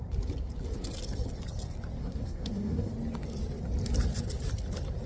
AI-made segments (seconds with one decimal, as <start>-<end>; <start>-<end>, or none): 2.0-2.9